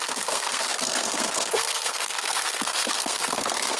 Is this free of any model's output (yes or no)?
no